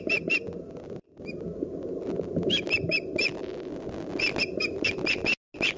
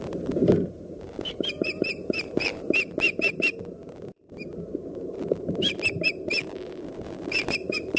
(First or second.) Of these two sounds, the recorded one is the first